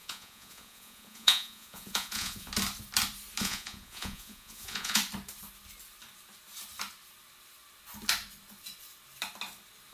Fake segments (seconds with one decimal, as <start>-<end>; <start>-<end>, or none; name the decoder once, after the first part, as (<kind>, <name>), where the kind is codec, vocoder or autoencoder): 0.0-2.5 (vocoder, Vocos); 3.4-5.0